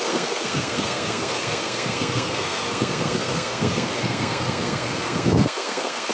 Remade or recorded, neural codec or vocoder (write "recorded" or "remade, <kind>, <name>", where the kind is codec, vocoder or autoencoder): remade, codec, SNAC